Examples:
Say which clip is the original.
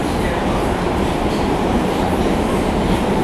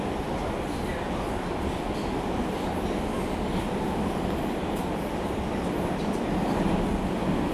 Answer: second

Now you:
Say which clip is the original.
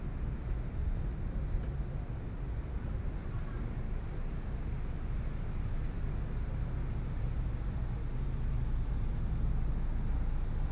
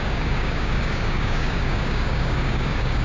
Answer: first